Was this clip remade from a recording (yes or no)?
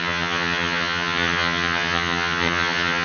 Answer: yes